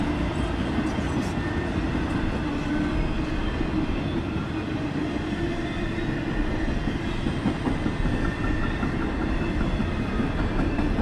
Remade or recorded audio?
recorded